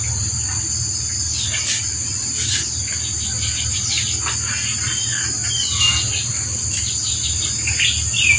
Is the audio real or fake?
real